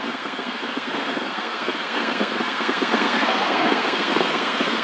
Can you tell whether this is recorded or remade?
remade